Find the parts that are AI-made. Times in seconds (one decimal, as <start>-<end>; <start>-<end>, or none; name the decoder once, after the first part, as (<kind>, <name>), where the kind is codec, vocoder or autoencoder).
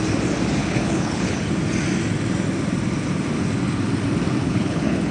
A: 0.6-1.4 (codec, HILCodec); 4.4-5.1